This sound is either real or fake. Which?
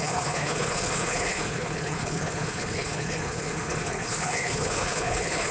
fake